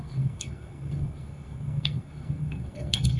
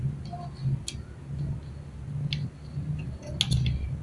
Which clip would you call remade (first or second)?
first